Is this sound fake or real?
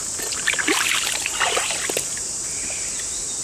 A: real